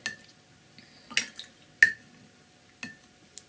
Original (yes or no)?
yes